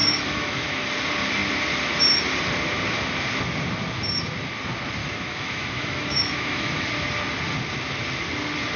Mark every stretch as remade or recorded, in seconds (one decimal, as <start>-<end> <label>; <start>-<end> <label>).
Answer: 0.0-0.9 remade; 0.9-5.0 recorded; 5.0-6.9 remade; 6.9-8.8 recorded